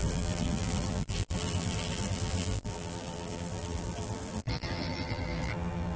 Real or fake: fake